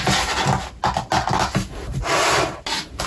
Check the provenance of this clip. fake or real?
real